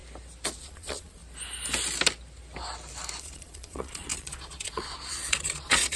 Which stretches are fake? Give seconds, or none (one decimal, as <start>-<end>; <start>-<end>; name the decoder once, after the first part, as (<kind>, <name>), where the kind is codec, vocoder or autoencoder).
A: 0.6-1.2 (vocoder, Vocos); 3.2-6.0